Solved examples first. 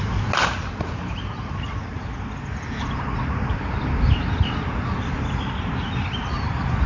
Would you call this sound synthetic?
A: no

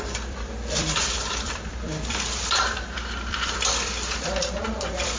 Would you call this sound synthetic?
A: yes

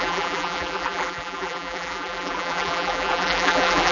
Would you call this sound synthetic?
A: yes